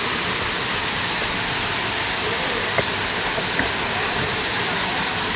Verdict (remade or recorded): recorded